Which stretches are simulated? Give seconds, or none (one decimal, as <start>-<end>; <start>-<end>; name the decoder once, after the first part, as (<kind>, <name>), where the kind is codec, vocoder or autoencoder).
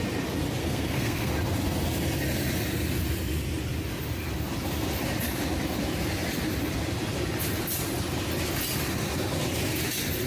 0.6-1.3 (codec, SNAC)